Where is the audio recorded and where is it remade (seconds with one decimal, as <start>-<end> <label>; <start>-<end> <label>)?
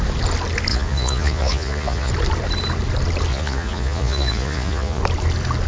0.0-0.7 recorded; 0.7-2.1 remade; 2.1-3.3 recorded; 3.3-5.0 remade; 5.0-5.7 recorded